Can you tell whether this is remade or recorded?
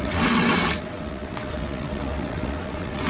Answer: remade